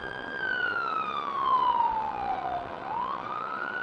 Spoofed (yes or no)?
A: yes